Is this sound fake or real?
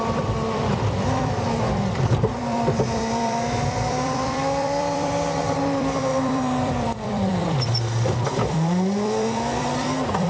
fake